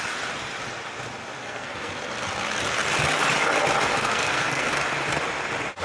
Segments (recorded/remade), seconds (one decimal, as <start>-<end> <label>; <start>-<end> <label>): 0.0-1.4 recorded; 1.4-1.9 remade; 1.9-3.9 recorded; 3.9-4.7 remade; 4.7-5.8 recorded